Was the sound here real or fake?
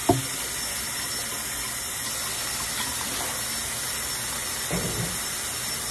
real